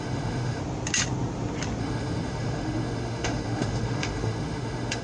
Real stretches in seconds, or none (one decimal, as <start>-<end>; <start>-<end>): 0.6-1.8